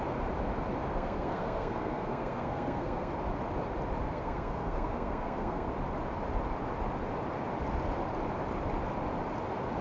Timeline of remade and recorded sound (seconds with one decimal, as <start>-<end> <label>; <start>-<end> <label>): 0.0-0.9 recorded; 0.9-3.1 remade; 3.1-4.0 recorded; 4.0-5.7 remade; 5.7-9.8 recorded